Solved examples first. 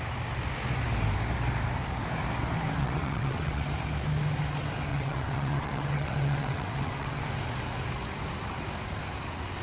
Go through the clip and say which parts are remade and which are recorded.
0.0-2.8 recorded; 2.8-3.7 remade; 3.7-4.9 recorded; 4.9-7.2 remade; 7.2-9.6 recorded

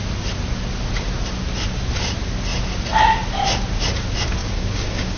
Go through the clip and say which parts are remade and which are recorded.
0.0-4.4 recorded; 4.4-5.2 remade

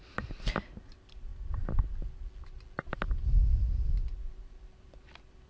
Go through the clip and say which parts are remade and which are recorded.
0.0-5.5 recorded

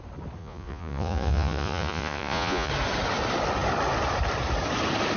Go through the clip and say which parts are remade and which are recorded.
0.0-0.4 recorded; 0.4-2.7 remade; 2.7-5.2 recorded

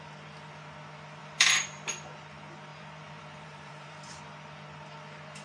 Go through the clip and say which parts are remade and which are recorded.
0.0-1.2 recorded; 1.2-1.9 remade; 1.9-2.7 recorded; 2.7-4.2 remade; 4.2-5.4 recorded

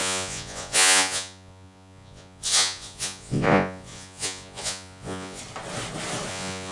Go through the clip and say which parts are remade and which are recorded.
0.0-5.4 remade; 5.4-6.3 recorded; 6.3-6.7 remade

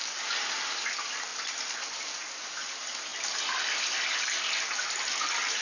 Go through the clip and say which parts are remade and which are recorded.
0.0-5.6 recorded